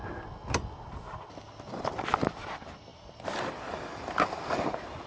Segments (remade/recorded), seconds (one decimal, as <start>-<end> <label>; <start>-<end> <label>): 0.0-5.1 recorded